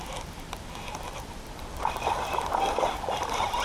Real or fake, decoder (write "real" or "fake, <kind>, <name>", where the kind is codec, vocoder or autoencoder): real